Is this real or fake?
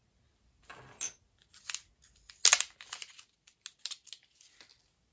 real